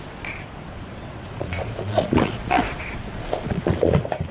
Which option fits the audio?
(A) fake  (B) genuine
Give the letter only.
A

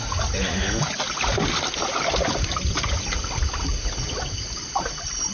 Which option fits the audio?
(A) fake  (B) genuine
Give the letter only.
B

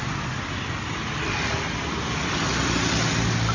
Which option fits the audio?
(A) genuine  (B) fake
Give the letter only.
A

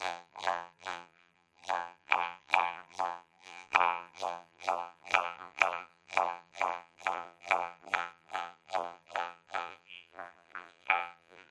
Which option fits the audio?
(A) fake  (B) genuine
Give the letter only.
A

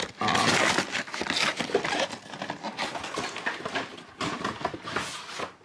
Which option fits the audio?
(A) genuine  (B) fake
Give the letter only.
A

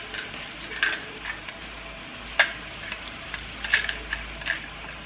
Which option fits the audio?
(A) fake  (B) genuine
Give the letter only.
B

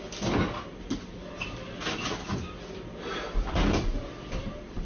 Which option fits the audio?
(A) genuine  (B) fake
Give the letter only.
A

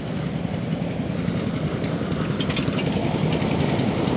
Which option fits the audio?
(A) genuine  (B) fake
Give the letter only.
A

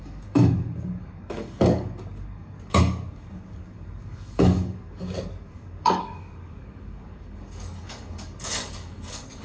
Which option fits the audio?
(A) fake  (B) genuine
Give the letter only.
A